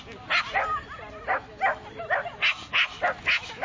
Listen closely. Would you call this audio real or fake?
real